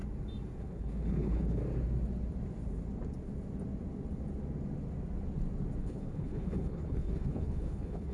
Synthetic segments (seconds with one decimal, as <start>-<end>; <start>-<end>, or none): 0.6-1.6; 5.8-8.1